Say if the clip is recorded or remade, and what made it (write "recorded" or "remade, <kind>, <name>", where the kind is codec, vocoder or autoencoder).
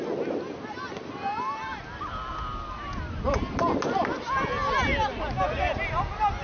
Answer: recorded